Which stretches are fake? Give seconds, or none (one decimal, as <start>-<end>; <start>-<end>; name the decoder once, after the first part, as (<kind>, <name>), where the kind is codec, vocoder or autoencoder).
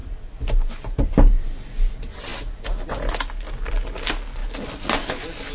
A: none